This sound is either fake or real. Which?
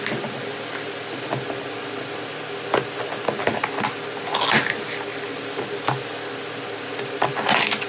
real